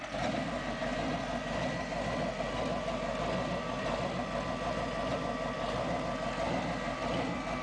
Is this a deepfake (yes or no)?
no